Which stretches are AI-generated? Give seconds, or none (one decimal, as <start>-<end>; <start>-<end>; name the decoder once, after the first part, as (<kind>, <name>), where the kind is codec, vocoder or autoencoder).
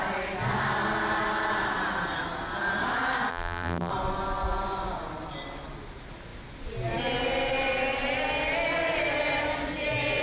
3.3-3.9 (vocoder, BigVGAN v2)